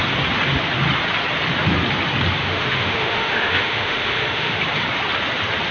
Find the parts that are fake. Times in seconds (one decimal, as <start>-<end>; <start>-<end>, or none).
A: 2.4-4.6